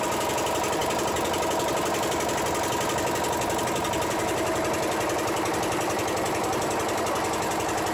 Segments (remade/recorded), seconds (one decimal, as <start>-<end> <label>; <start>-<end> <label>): 0.0-7.9 recorded